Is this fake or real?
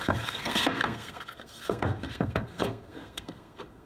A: fake